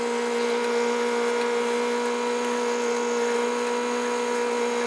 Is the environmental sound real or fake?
real